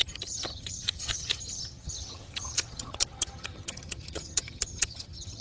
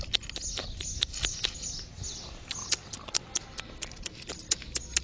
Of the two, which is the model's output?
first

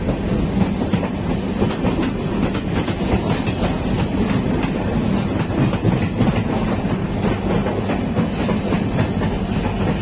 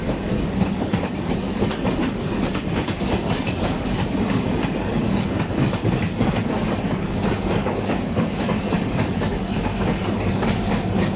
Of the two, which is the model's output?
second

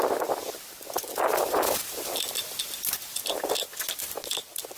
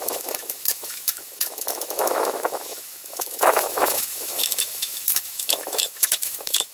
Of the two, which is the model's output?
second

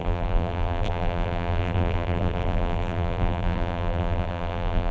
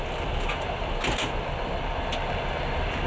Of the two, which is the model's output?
first